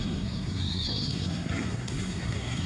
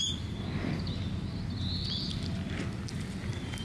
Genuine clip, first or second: second